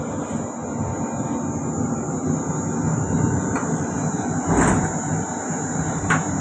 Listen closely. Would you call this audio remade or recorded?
recorded